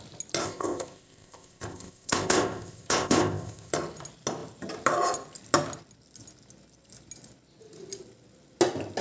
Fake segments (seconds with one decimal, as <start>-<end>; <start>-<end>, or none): 0.4-3.7